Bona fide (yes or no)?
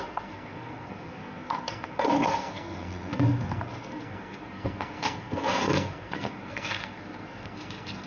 no